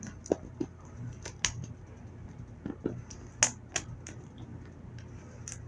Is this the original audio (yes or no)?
yes